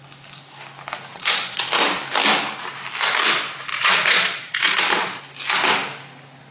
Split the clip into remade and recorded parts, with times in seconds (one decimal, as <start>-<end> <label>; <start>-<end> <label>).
0.0-1.1 recorded; 1.1-1.8 remade; 1.8-3.7 recorded; 3.7-5.2 remade; 5.2-6.5 recorded